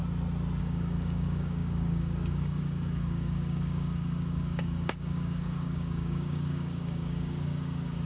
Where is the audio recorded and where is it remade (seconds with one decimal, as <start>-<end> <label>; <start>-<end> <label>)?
0.0-0.6 recorded; 0.6-8.0 remade